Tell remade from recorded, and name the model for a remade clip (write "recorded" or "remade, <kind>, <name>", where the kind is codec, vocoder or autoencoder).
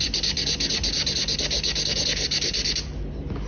recorded